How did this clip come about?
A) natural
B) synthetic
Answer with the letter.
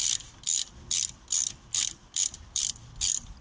A